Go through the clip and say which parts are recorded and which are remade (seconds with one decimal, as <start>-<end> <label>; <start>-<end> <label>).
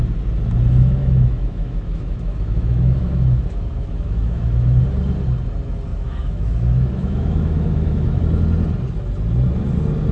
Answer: 0.0-1.0 recorded; 1.0-4.8 remade; 4.8-5.9 recorded; 5.9-8.2 remade; 8.2-10.1 recorded